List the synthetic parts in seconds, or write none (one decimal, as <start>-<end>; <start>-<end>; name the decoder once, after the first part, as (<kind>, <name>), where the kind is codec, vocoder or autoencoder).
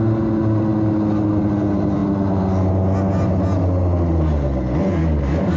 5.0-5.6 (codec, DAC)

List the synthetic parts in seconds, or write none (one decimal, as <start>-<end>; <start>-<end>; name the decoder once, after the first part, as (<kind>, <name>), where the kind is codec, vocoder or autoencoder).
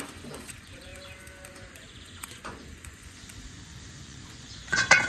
0.0-5.1 (vocoder, Vocos)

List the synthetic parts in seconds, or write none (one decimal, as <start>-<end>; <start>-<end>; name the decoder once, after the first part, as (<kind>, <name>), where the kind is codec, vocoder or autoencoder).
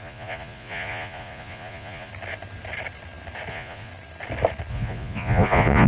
0.0-2.1 (vocoder, Vocos); 3.5-3.9; 4.7-5.9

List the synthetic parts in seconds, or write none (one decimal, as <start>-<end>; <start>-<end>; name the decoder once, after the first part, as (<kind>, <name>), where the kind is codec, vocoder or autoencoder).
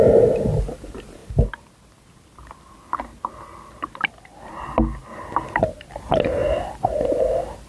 none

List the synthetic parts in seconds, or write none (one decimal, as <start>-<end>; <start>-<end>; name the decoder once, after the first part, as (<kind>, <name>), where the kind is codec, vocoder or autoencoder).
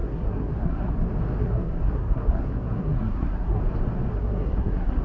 0.0-0.9 (codec, SNAC); 1.4-3.6; 4.1-5.0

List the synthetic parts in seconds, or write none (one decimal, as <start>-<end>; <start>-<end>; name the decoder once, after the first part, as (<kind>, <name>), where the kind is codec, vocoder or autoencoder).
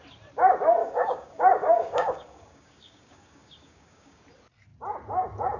0.8-4.2 (codec, DAC)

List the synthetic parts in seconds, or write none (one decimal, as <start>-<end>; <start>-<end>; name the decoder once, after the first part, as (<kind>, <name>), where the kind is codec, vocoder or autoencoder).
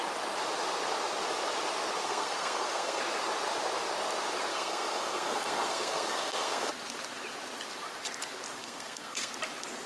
2.0-3.0 (codec, SNAC); 4.5-6.7; 8.6-9.3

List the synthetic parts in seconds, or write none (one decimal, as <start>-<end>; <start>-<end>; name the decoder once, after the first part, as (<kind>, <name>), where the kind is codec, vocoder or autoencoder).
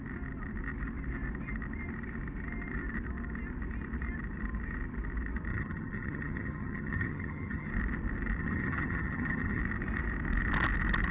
5.5-7.7 (vocoder, HiFi-GAN); 8.4-9.6